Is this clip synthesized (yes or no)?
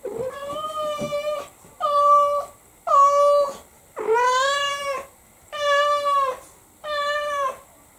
no